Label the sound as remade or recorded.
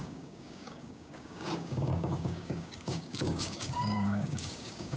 remade